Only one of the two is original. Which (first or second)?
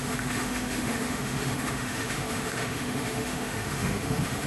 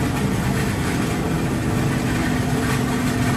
second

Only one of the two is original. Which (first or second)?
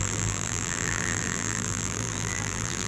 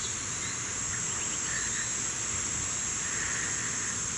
second